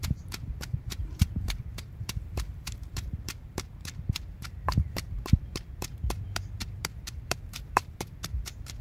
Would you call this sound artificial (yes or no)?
yes